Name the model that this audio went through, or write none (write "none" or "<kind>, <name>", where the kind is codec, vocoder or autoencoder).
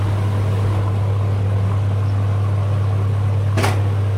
none